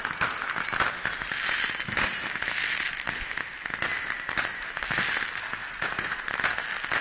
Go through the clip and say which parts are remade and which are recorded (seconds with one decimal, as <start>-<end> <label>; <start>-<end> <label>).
0.0-5.6 recorded; 5.6-6.2 remade; 6.2-7.0 recorded